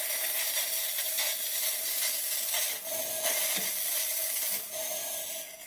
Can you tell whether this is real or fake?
real